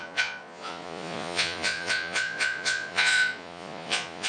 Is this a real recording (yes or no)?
no